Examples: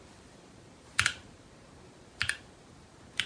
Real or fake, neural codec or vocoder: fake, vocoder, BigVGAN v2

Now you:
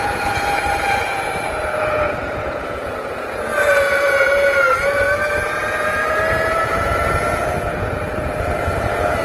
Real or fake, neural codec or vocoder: fake, vocoder, Vocos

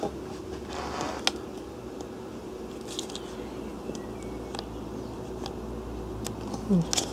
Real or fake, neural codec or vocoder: real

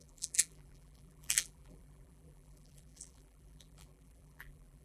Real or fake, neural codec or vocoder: fake, vocoder, BigVGAN v2